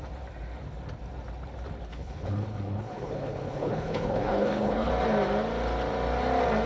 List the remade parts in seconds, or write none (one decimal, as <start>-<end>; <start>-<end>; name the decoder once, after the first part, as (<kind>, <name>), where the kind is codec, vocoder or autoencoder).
1.9-4.9 (codec, HILCodec)